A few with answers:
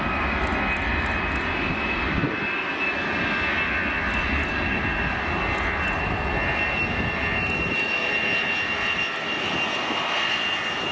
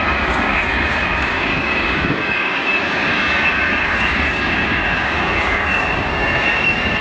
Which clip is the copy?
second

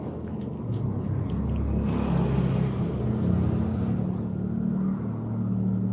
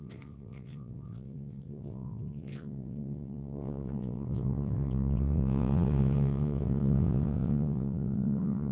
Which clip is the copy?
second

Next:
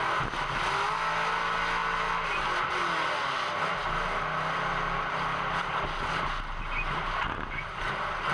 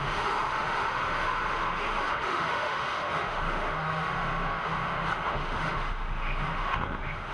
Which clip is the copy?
second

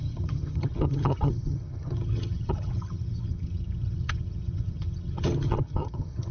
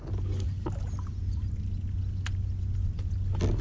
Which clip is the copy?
first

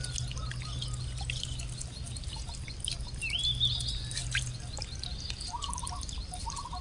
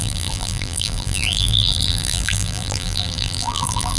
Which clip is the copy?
second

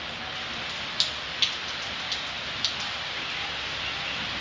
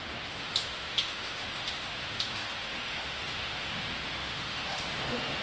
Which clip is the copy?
second